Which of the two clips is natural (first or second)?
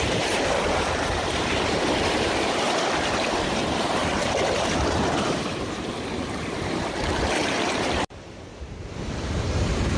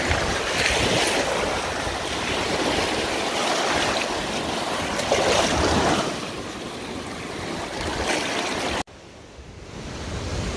second